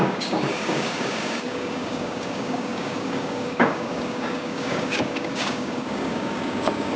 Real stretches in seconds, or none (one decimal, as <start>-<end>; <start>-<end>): none